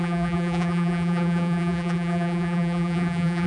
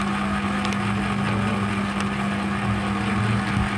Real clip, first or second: second